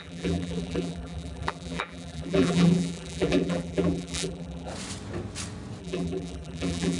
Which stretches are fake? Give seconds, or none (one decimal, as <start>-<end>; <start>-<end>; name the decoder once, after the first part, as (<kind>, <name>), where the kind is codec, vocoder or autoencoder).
0.0-4.7 (vocoder, BigVGAN v2); 5.8-7.0